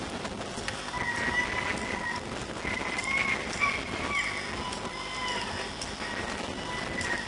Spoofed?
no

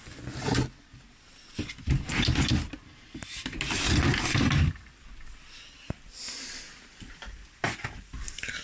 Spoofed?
no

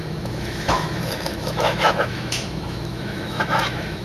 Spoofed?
yes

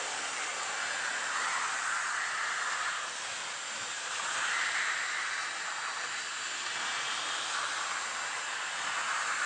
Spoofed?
no